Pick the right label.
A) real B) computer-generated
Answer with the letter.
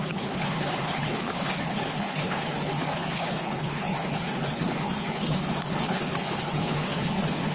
B